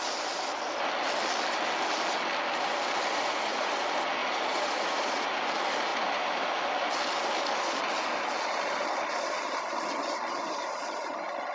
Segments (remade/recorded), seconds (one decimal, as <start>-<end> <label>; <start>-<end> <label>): 0.0-3.1 recorded; 3.1-3.7 remade; 3.7-4.2 recorded; 4.2-5.5 remade; 5.5-11.5 recorded